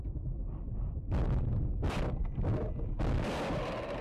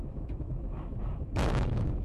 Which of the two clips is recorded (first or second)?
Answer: first